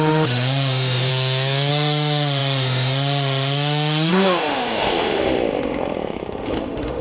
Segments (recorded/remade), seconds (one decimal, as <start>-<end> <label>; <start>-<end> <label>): 0.0-1.1 remade; 1.1-1.7 recorded; 1.7-7.0 remade